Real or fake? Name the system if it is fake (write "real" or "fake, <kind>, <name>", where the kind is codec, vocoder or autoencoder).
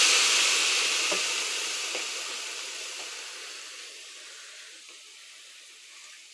real